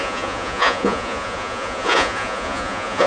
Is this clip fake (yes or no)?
yes